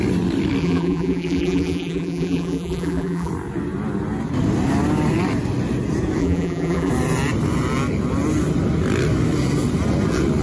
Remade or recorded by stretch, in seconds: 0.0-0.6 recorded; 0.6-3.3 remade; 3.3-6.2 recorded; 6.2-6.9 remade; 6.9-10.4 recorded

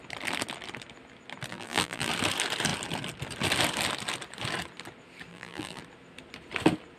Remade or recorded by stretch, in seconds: 0.0-1.5 recorded; 1.5-2.1 remade; 2.1-5.3 recorded; 5.3-5.8 remade; 5.8-7.0 recorded